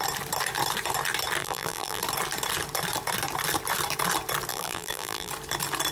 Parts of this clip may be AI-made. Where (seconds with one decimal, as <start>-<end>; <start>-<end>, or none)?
1.4-2.0; 4.5-5.3